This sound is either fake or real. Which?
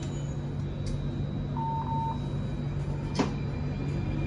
real